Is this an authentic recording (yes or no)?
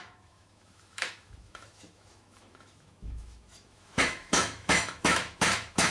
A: no